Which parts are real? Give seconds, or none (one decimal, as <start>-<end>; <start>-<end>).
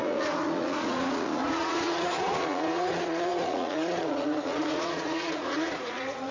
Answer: none